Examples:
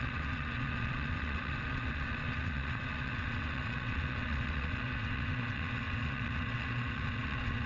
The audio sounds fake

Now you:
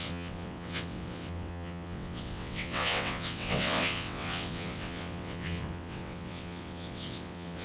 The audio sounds fake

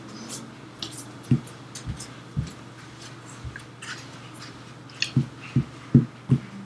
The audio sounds real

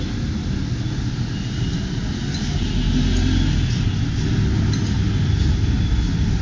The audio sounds real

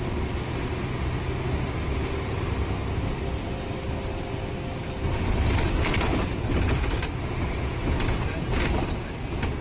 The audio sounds real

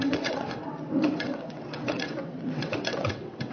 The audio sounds fake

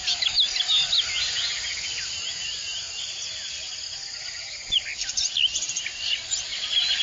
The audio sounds real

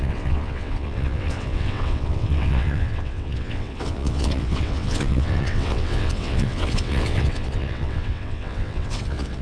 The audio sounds fake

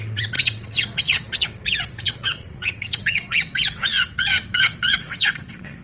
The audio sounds fake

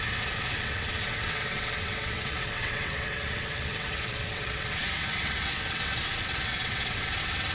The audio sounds fake